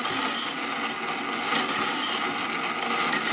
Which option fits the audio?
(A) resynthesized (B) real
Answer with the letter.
B